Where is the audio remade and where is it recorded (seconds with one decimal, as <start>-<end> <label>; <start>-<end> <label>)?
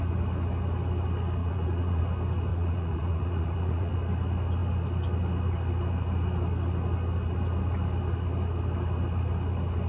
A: 0.0-1.4 recorded; 1.4-2.0 remade; 2.0-2.5 recorded; 2.5-3.9 remade; 3.9-9.9 recorded